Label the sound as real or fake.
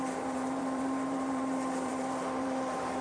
fake